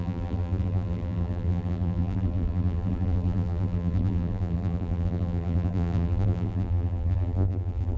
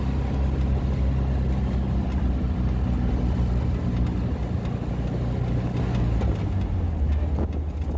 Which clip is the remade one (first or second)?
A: first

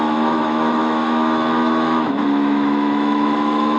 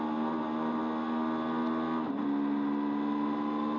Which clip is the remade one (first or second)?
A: first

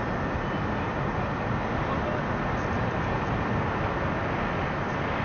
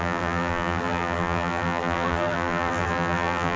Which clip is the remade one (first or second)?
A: second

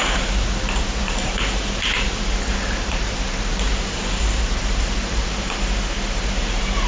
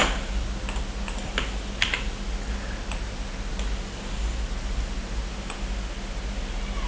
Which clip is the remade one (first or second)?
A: first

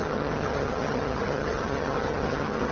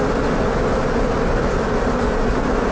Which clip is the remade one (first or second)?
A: first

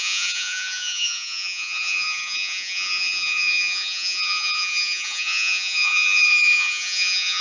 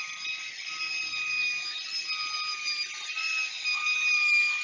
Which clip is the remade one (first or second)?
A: first